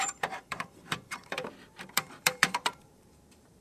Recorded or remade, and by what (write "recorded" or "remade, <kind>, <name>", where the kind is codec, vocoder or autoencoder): remade, vocoder, BigVGAN v2